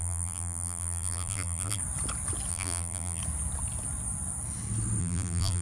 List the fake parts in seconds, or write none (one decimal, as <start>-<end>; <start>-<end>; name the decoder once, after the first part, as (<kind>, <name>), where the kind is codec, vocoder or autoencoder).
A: 0.0-1.8 (vocoder, BigVGAN v2); 2.5-3.2; 5.0-5.6